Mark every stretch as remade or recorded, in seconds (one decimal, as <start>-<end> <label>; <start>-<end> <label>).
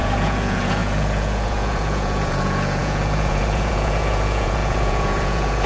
0.0-5.7 remade